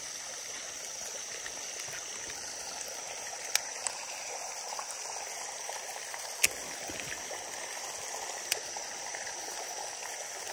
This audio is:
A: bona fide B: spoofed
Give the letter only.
A